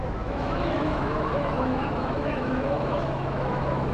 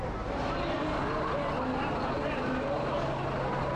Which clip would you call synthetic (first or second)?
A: first